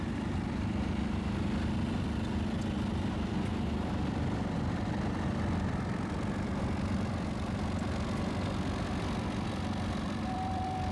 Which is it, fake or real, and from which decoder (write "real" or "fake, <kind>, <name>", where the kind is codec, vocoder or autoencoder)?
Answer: fake, vocoder, BigVGAN v2